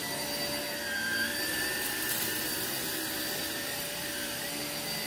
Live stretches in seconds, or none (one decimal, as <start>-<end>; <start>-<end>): 0.0-1.5; 4.6-5.1